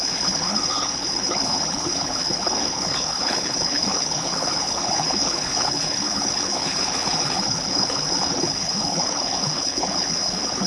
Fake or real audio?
fake